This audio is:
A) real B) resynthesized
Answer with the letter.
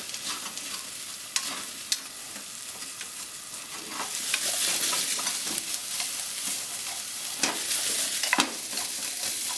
A